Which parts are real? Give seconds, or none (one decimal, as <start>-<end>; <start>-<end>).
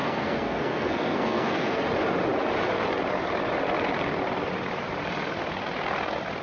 1.8-6.4